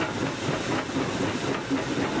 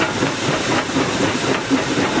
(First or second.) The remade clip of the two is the second